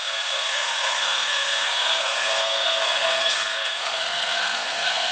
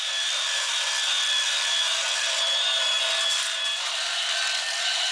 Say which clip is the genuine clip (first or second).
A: second